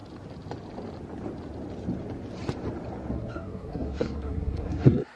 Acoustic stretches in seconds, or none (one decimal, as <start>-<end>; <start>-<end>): 0.0-3.1